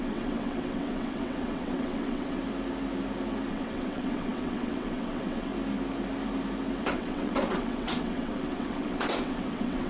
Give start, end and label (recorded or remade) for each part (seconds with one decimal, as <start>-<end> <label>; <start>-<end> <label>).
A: 0.0-2.4 remade; 2.4-3.5 recorded; 3.5-5.5 remade; 5.5-6.8 recorded; 6.8-9.9 remade